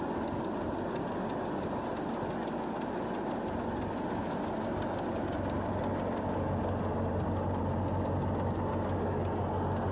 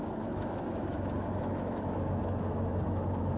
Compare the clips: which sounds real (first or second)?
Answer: first